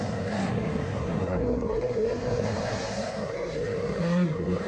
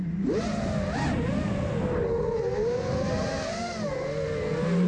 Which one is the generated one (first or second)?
first